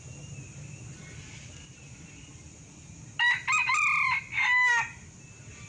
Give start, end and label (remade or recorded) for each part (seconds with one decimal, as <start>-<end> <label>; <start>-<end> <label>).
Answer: 0.0-5.7 recorded